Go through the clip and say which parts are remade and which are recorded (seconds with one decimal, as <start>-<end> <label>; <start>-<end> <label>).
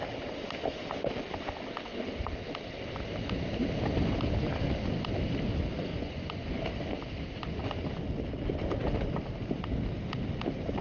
0.0-5.9 recorded; 5.9-6.6 remade; 6.6-10.8 recorded